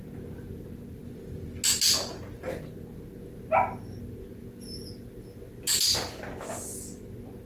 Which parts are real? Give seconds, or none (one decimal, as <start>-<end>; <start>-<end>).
0.0-7.5